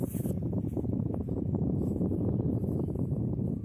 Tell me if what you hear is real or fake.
fake